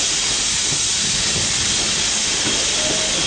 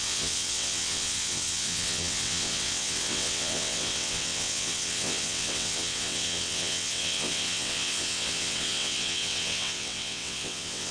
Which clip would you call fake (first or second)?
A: second